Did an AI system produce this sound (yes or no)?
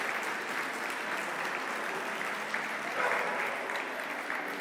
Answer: no